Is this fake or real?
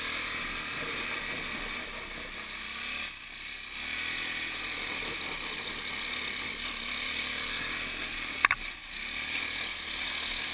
real